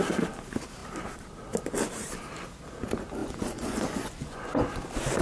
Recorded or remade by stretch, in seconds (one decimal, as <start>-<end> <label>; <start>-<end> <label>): 0.0-3.2 recorded; 3.2-4.7 remade; 4.7-5.2 recorded